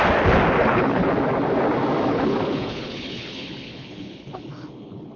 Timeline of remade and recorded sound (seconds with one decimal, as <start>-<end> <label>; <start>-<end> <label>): 0.0-0.6 recorded; 0.6-1.1 remade; 1.1-2.1 recorded; 2.1-5.2 remade